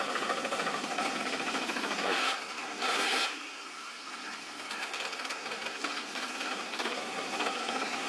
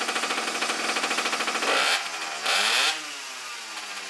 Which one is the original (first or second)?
second